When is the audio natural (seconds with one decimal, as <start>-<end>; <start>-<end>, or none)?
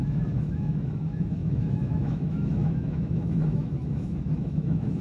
none